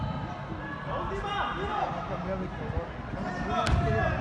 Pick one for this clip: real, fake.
real